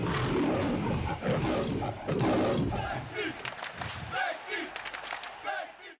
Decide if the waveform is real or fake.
real